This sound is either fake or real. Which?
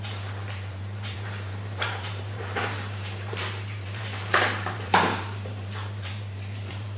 fake